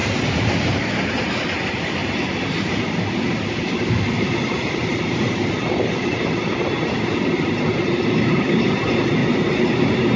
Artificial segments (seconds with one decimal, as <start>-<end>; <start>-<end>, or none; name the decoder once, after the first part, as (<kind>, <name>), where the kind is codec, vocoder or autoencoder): 0.0-0.8 (vocoder, BigVGAN v2); 2.0-6.7

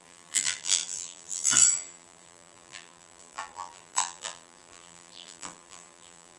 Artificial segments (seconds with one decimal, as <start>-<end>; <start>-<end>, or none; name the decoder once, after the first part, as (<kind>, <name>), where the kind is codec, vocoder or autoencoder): 0.0-6.4 (vocoder, BigVGAN v2)

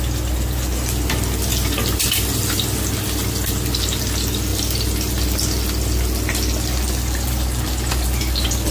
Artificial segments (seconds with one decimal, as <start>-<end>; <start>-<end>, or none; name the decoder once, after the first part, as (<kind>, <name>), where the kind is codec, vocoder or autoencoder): none

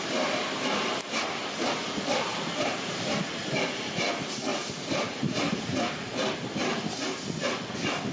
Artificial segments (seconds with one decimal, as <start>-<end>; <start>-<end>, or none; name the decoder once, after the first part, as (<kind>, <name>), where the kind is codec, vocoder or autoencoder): 2.3-3.4 (vocoder, BigVGAN v2); 4.5-5.6

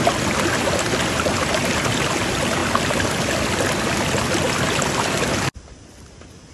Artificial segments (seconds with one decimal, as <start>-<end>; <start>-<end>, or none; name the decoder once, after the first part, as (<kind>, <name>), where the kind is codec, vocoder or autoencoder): 0.0-2.6 (vocoder, BigVGAN v2)

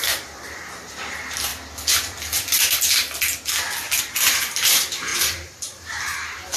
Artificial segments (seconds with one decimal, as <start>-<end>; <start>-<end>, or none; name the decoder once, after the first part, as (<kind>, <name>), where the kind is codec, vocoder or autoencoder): 0.0-1.5 (vocoder, BigVGAN v2); 4.0-6.6